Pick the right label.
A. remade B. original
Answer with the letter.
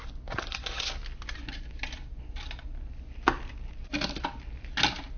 B